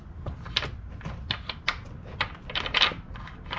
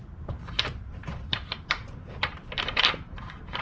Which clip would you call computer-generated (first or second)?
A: second